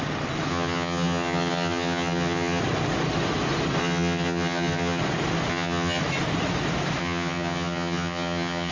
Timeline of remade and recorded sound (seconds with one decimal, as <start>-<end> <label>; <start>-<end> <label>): 0.0-0.5 recorded; 0.5-2.6 remade; 2.6-3.8 recorded; 3.8-5.0 remade; 5.0-5.5 recorded; 5.5-6.0 remade; 6.0-7.0 recorded; 7.0-8.7 remade